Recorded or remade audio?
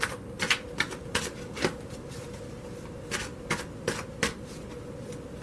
recorded